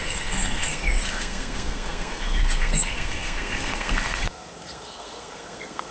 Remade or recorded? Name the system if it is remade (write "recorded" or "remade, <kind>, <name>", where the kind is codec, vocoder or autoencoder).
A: remade, codec, SNAC